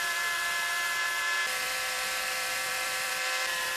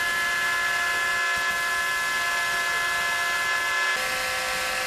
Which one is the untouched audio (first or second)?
second